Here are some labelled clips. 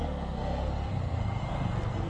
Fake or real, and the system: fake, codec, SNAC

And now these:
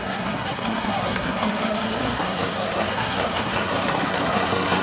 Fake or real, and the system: fake, codec, SNAC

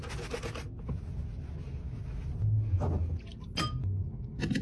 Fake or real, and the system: real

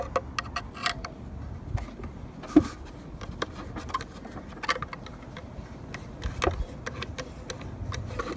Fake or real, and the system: real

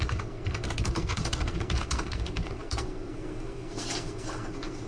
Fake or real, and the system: fake, codec, SNAC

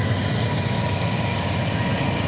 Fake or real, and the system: real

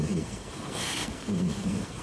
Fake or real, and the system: fake, codec, SNAC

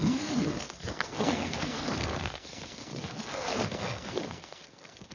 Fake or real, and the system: fake, codec, SNAC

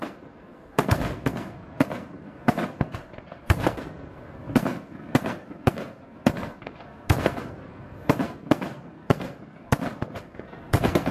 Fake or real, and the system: fake, codec, SNAC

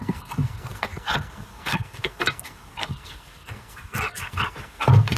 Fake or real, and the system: fake, codec, SNAC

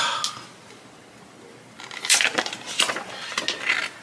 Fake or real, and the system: real